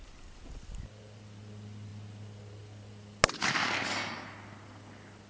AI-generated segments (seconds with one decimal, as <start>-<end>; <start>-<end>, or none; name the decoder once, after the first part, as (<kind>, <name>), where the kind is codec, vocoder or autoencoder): none